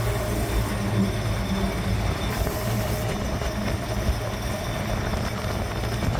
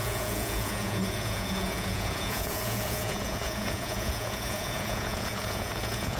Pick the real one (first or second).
first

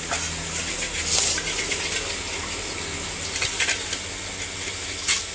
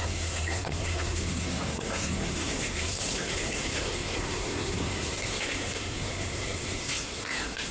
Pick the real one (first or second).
first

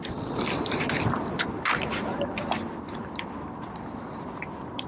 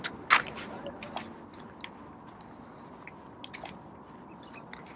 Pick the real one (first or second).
second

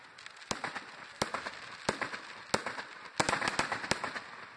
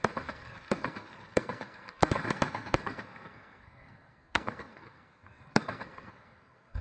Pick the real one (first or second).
first